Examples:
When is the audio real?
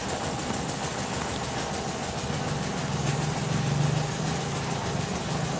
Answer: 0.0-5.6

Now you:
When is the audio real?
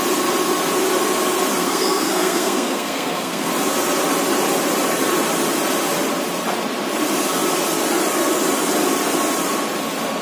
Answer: 0.0-1.6; 3.5-10.2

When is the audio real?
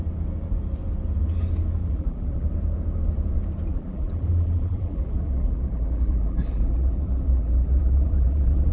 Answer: 0.0-1.8; 2.5-3.7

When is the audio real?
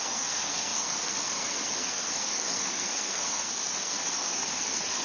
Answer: none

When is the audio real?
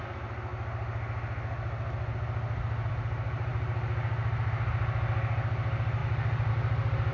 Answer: 0.0-7.1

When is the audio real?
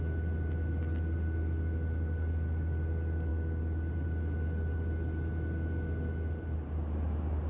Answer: 0.0-7.5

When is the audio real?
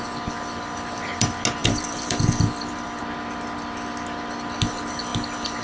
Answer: 0.0-1.6; 3.0-5.6